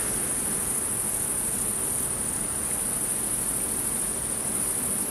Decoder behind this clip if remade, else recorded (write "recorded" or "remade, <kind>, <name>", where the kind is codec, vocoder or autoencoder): recorded